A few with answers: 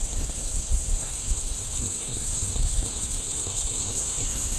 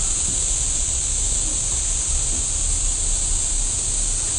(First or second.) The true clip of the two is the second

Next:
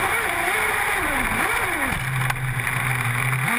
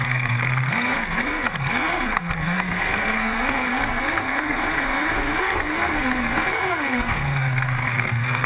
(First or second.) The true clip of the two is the first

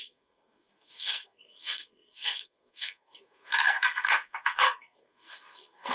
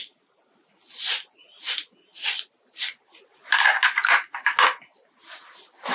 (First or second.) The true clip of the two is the second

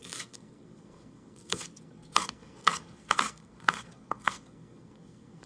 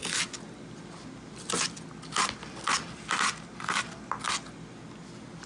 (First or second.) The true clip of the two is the second